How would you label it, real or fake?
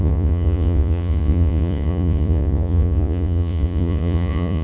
fake